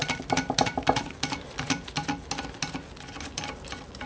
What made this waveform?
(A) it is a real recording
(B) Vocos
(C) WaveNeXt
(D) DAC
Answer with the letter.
A